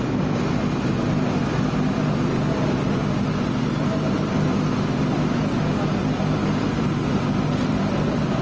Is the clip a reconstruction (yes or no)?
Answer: no